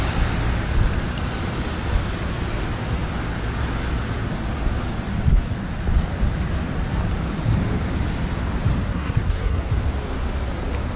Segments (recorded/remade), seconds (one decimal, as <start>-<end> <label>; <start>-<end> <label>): 0.0-8.9 recorded; 8.9-9.7 remade; 9.7-11.0 recorded